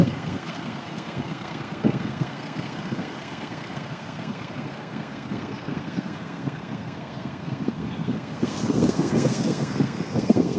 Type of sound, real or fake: fake